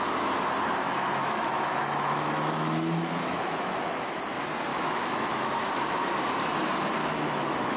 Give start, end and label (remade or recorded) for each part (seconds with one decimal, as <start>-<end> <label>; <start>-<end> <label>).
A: 0.0-1.2 recorded; 1.2-4.2 remade; 4.2-4.7 recorded; 4.7-5.7 remade; 5.7-7.0 recorded; 7.0-7.8 remade